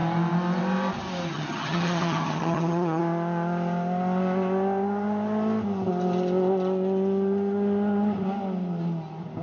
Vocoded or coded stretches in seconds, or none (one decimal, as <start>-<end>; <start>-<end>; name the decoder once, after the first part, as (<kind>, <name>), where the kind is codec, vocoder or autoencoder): 1.3-3.0 (vocoder, HiFi-GAN)